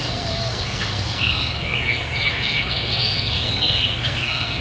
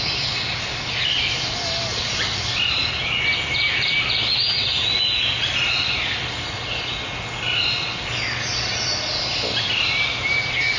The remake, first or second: first